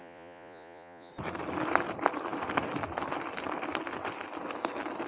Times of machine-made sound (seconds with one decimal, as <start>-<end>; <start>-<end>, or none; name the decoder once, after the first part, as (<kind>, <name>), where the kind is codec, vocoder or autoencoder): 0.0-1.1 (vocoder, Vocos)